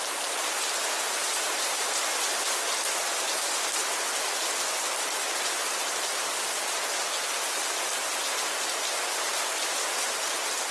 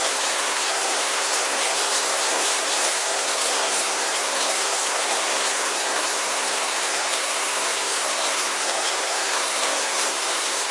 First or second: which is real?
first